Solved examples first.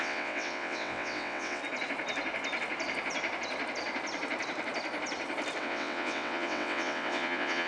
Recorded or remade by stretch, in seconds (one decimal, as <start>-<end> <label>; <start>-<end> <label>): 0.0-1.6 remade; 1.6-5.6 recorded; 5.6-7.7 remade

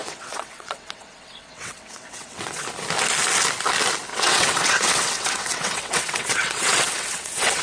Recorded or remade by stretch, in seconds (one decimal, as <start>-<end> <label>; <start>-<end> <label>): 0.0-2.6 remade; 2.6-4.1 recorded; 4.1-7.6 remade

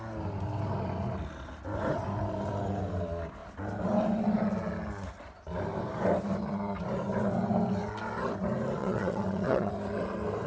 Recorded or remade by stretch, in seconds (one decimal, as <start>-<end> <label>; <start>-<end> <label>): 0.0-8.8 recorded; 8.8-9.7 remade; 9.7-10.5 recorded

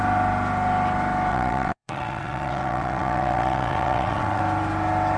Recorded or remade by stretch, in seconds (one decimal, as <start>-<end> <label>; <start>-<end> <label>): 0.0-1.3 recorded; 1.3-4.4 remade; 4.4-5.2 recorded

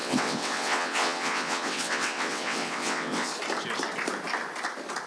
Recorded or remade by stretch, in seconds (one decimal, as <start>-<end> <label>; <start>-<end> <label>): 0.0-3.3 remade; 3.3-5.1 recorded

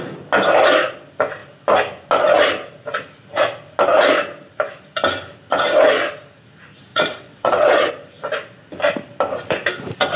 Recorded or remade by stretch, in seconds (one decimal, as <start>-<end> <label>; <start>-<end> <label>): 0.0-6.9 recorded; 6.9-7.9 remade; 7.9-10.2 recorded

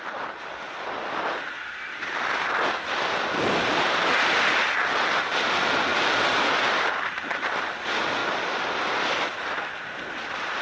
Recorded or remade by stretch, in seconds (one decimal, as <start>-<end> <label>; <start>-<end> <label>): 0.0-10.6 recorded